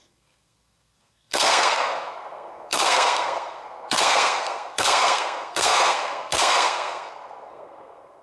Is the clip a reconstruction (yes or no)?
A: yes